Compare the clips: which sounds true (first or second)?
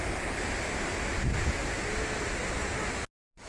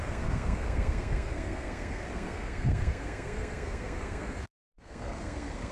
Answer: first